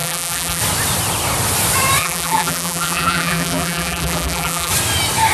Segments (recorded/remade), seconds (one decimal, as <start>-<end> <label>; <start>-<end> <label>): 0.0-0.6 remade; 0.6-2.0 recorded; 2.0-4.7 remade; 4.7-5.3 recorded